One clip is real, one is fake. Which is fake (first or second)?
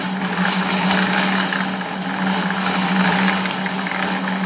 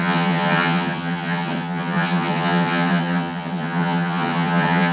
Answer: second